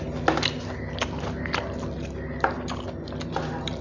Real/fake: real